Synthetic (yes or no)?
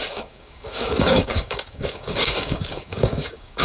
yes